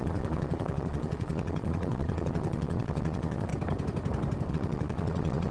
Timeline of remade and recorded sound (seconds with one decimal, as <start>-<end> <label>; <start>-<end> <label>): 0.0-3.5 remade; 3.5-4.5 recorded; 4.5-5.5 remade